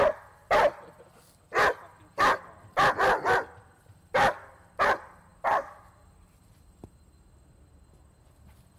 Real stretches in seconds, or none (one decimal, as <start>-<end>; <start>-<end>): 0.0-8.8